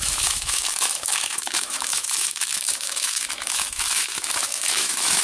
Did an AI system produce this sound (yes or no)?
yes